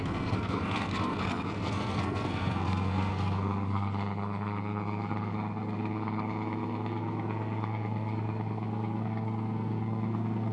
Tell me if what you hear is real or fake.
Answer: fake